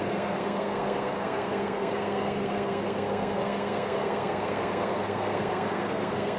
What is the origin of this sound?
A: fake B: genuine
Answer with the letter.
A